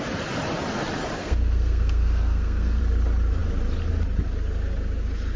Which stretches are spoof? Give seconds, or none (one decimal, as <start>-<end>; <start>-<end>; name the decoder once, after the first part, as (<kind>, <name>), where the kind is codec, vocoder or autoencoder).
1.2-2.8 (codec, SNAC)